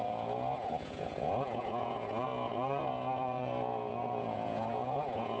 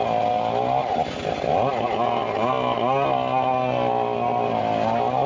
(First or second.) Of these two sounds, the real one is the second